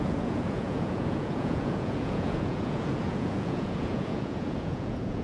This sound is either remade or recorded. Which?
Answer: remade